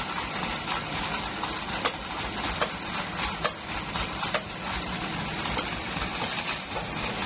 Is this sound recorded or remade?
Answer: recorded